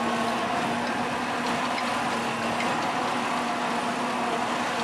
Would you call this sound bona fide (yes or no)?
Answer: yes